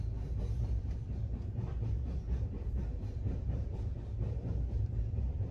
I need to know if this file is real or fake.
fake